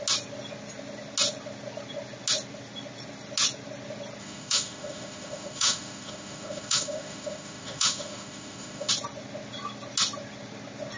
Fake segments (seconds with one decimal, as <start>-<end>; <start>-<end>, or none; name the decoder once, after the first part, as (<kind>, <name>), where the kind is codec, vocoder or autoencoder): 4.2-8.9 (autoencoder, DAC-VAE)